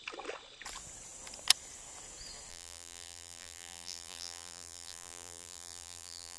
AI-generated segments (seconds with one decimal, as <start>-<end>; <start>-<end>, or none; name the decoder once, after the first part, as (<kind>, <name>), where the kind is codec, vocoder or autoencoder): 2.5-6.4 (vocoder, BigVGAN v2)